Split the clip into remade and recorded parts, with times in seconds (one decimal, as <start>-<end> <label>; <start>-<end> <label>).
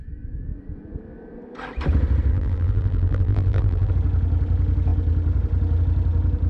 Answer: 0.0-2.3 recorded; 2.3-3.9 remade; 3.9-6.5 recorded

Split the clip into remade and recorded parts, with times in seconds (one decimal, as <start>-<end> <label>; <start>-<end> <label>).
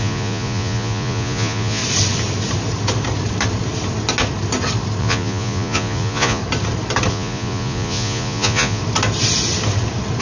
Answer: 0.0-1.8 remade; 1.8-5.0 recorded; 5.0-6.4 remade; 6.4-7.1 recorded; 7.1-8.8 remade; 8.8-10.2 recorded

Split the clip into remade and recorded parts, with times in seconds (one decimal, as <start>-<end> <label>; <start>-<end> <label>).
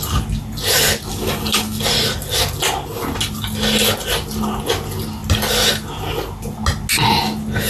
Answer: 0.0-1.1 recorded; 1.1-1.8 remade; 1.8-7.7 recorded